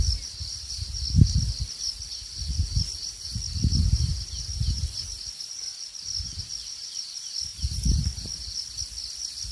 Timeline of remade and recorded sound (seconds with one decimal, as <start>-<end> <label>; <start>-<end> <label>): 0.0-9.5 recorded